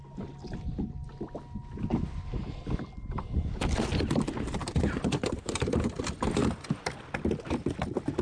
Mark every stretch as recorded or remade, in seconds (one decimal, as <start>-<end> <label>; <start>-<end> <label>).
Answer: 0.0-4.6 recorded; 4.6-6.0 remade; 6.0-8.2 recorded